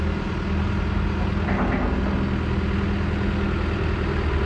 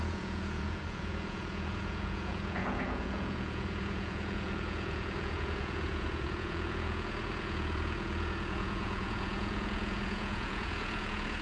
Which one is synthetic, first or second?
second